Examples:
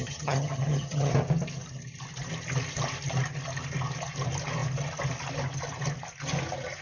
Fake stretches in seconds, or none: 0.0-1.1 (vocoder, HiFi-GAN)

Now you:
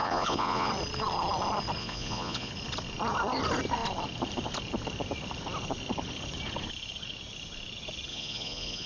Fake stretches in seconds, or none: 0.0-0.7 (vocoder, Vocos); 1.8-2.5; 8.1-8.9

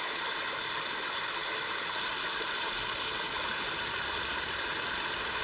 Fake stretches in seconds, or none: none

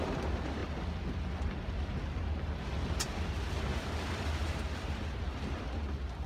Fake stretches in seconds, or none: 4.4-5.0 (vocoder, BigVGAN v2)

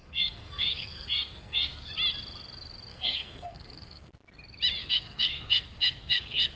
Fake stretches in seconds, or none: 0.0-1.9 (codec, SNAC); 2.9-4.1; 4.8-6.6

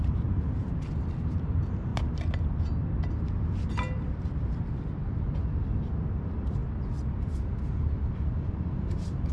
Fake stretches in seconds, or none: 0.0-0.6 (vocoder, BigVGAN v2); 1.2-1.9; 5.9-6.6; 7.2-9.3